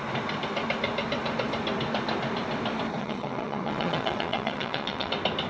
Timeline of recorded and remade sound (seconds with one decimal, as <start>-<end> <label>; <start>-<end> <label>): 0.0-3.0 recorded; 3.0-5.1 remade; 5.1-5.5 recorded